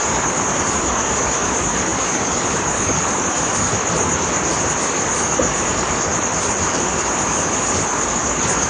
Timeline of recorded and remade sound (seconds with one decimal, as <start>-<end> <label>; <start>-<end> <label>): 0.0-3.8 remade; 3.8-4.9 recorded; 4.9-6.1 remade; 6.1-6.7 recorded; 6.7-8.7 remade